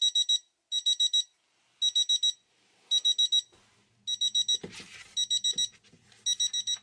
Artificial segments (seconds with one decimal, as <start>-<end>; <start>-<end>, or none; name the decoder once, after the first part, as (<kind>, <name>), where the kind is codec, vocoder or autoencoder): none